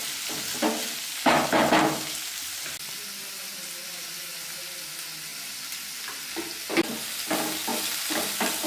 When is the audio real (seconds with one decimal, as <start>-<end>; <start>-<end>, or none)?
0.0-5.3; 5.9-8.7